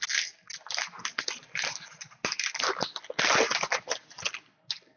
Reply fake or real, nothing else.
real